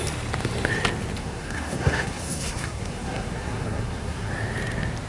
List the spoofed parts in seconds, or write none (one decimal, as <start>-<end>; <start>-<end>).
1.2-4.3